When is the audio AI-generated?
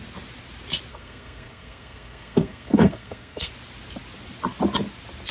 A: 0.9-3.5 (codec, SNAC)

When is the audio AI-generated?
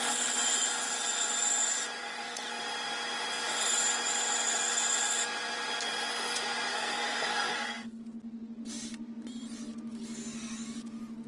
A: 2.0-2.6 (codec, SNAC); 6.7-8.0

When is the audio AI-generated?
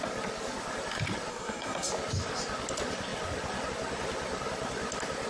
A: 1.3-1.9 (codec, SNAC)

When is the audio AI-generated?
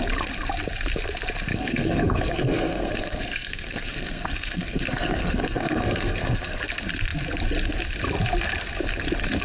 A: 1.5-6.6 (codec, SNAC)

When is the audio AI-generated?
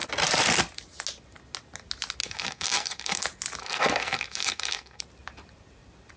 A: 2.2-3.2 (codec, SNAC); 3.6-5.0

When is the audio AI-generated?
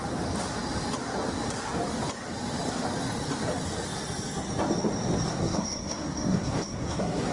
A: 5.3-7.3 (codec, SNAC)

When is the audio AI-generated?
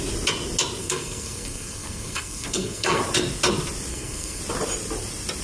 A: 0.8-3.0 (codec, SNAC); 3.9-4.4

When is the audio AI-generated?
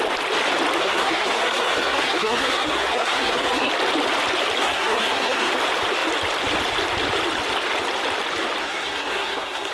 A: 0.8-3.7 (codec, SNAC); 4.6-5.5; 8.6-9.7